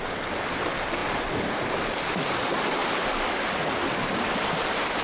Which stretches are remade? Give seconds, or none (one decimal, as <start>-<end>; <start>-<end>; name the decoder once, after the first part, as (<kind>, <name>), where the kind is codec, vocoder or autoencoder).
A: 0.0-2.8 (vocoder, BigVGAN v2); 4.0-5.0